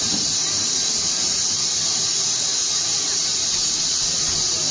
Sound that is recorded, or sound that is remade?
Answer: recorded